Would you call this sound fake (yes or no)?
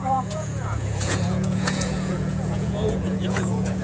yes